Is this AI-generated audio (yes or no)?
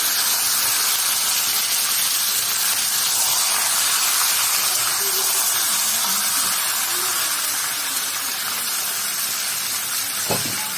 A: no